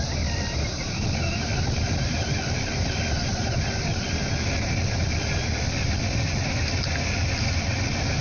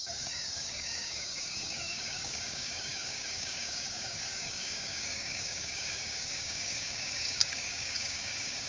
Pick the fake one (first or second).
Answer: second